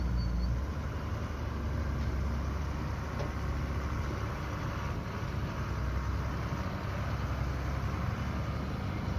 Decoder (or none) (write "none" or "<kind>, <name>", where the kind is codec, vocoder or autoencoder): none